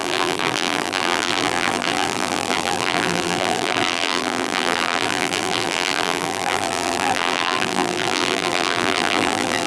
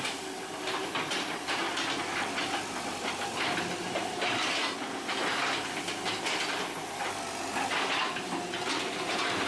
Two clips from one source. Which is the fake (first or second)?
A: first